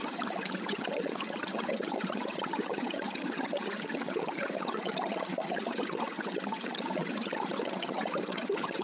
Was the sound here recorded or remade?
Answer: remade